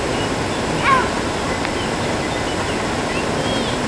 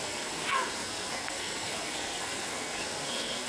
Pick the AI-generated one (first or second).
second